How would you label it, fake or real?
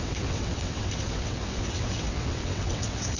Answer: fake